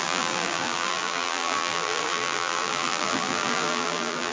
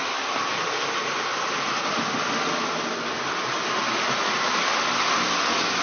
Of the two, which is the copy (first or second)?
first